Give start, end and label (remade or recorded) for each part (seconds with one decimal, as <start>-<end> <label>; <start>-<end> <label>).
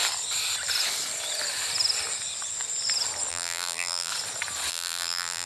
0.0-3.3 recorded; 3.3-4.1 remade; 4.1-4.7 recorded; 4.7-5.5 remade